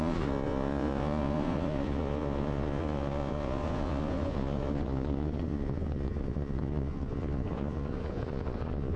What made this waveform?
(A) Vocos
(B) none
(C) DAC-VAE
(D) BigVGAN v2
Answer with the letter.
A